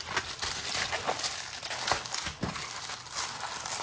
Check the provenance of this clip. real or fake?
real